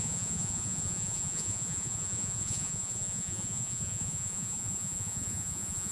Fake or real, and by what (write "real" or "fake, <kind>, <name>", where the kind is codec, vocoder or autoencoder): fake, vocoder, Vocos